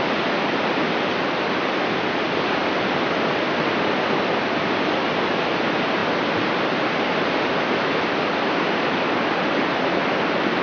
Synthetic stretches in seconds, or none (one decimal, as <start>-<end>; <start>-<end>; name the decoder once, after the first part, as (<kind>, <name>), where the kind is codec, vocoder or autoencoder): none